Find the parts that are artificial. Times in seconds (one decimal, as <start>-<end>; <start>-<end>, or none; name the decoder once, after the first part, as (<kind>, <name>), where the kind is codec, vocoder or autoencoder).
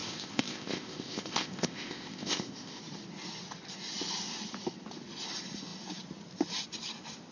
0.0-2.8 (codec, ZipCodec)